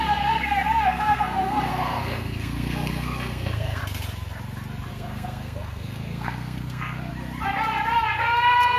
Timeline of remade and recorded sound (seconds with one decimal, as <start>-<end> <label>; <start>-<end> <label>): 0.0-3.8 remade; 3.8-4.9 recorded; 4.9-7.1 remade; 7.1-8.8 recorded

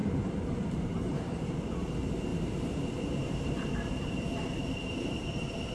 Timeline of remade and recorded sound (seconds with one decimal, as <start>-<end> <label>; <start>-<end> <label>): 0.0-1.4 remade; 1.4-2.3 recorded; 2.3-5.7 remade